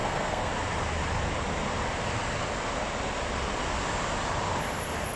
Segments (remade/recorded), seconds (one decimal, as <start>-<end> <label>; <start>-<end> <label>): 0.0-0.5 remade; 0.5-5.2 recorded